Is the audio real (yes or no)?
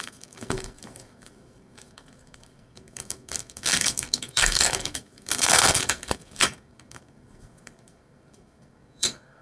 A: no